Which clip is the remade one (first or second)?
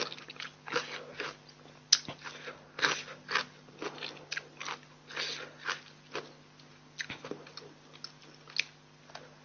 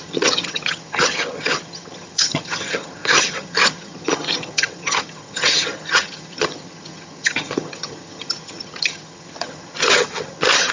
second